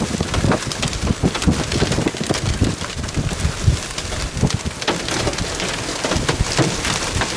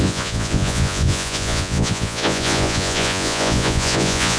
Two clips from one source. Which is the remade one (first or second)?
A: second